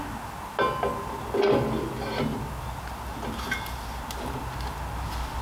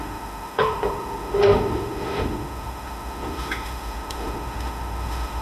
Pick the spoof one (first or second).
second